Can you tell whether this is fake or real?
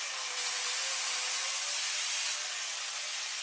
real